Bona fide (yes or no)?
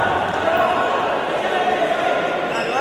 yes